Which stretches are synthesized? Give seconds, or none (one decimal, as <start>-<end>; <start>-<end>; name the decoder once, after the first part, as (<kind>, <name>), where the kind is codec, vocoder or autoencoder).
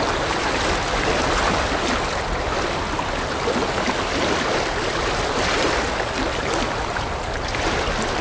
4.5-8.2 (vocoder, BigVGAN v2)